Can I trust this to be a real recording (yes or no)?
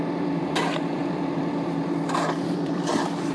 no